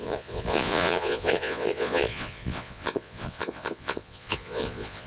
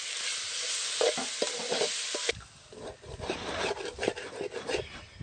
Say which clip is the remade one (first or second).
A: first